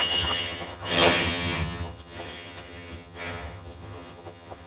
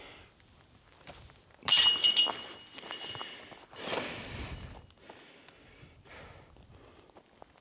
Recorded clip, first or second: second